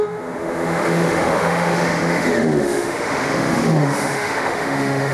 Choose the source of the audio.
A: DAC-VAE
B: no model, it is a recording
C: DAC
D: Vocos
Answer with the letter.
A